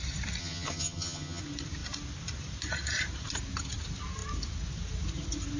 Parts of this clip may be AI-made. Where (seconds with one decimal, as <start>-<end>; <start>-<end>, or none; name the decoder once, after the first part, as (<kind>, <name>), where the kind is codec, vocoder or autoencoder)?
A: 0.4-1.4 (vocoder, HiFi-GAN)